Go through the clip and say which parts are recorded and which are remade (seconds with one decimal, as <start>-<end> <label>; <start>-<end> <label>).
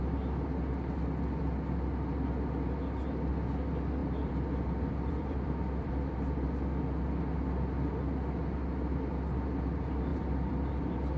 0.0-4.0 recorded; 4.0-5.9 remade; 5.9-10.1 recorded; 10.1-10.7 remade; 10.7-11.2 recorded